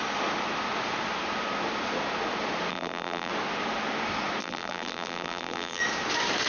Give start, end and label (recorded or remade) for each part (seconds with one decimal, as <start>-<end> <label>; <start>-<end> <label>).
0.0-2.7 recorded; 2.7-3.3 remade; 3.3-4.4 recorded; 4.4-5.8 remade; 5.8-6.5 recorded